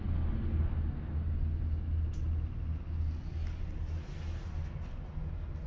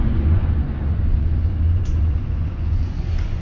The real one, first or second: first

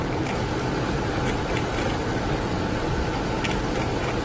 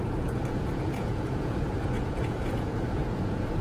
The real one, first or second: first